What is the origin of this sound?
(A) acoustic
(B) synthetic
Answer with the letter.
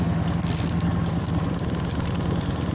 A